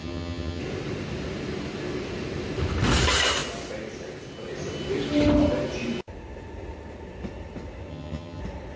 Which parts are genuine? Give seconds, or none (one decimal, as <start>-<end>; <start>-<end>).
0.6-7.9; 8.4-8.8